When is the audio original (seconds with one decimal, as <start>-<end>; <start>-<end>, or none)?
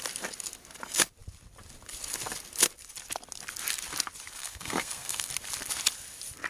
0.0-4.4; 5.3-6.5